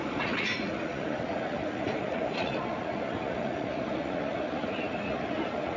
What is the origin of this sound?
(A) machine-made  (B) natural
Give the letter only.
A